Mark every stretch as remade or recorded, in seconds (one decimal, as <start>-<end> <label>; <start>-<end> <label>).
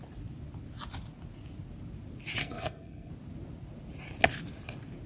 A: 0.0-2.4 recorded; 2.4-3.1 remade; 3.1-5.1 recorded